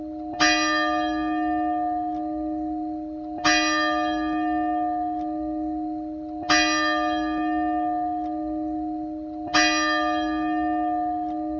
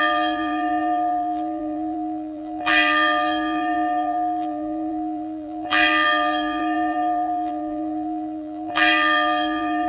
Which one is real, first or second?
first